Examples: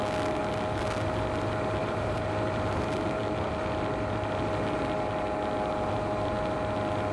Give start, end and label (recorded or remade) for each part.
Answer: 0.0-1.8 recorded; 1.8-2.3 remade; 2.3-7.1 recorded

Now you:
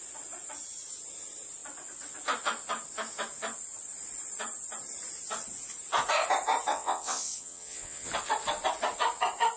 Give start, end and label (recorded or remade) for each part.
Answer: 0.0-6.7 recorded; 6.7-8.1 remade; 8.1-9.6 recorded

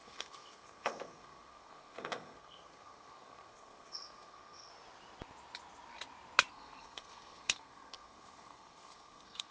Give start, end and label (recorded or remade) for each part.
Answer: 0.0-4.7 remade; 4.7-6.5 recorded; 6.5-9.5 remade

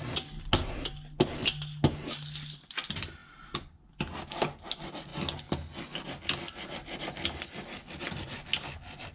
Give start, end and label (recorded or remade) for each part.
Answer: 0.0-9.1 recorded

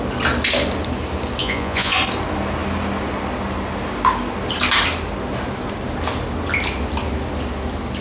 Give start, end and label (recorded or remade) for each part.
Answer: 0.0-1.4 recorded; 1.4-2.0 remade; 2.0-8.0 recorded

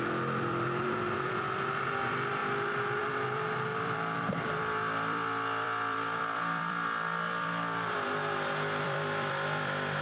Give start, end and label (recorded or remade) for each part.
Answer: 0.0-2.4 remade; 2.4-3.0 recorded; 3.0-8.2 remade; 8.2-8.8 recorded; 8.8-10.0 remade

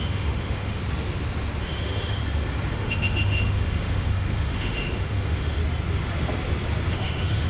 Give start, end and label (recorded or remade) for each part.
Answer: 0.0-0.8 remade; 0.8-1.6 recorded; 1.6-2.2 remade; 2.2-2.7 recorded; 2.7-5.6 remade; 5.6-6.9 recorded; 6.9-7.5 remade

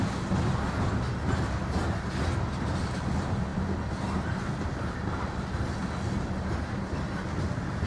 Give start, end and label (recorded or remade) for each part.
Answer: 0.0-7.9 recorded